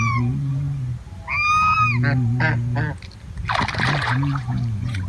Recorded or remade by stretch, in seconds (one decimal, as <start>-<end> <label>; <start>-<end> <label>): 0.0-0.9 remade; 0.9-4.0 recorded; 4.0-5.1 remade